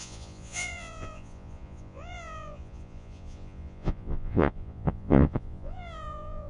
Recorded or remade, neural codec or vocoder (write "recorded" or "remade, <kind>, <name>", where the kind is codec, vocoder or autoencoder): remade, vocoder, Vocos